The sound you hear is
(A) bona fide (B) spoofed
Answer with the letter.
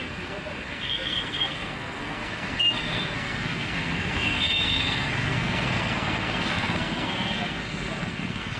B